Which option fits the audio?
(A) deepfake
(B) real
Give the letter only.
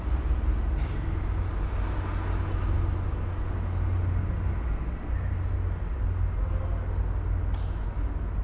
B